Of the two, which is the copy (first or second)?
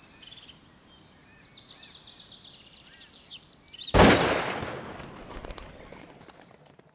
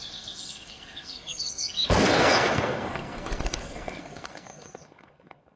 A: second